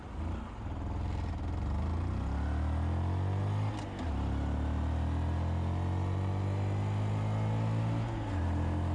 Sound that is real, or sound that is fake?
real